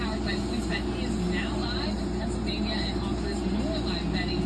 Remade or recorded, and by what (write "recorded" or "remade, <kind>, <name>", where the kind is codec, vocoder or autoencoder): recorded